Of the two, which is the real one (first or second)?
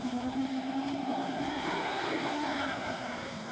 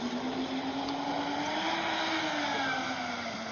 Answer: second